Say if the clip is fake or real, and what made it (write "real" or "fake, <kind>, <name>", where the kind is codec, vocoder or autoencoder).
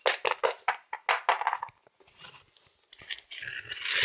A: real